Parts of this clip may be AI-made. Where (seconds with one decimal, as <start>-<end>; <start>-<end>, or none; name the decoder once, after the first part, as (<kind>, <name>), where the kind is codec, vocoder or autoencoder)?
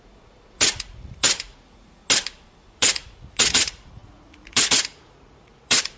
0.0-2.0 (vocoder, Vocos); 2.7-6.0